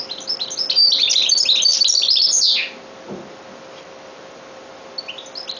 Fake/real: real